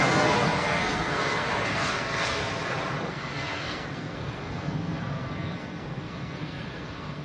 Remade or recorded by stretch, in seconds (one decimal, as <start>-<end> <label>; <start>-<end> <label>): 0.0-2.4 remade; 2.4-3.1 recorded; 3.1-7.2 remade